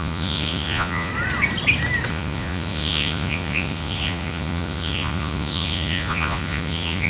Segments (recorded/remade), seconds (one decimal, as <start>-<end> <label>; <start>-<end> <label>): 0.0-1.1 remade; 1.1-2.1 recorded; 2.1-7.1 remade